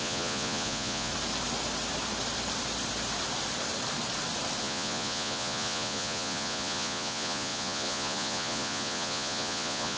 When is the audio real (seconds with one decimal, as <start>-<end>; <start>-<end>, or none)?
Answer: 1.1-4.6